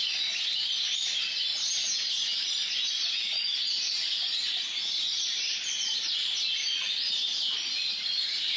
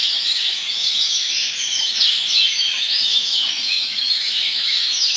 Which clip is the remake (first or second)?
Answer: second